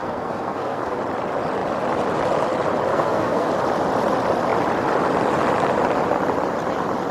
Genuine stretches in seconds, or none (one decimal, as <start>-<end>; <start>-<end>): 1.0-2.9; 3.5-7.1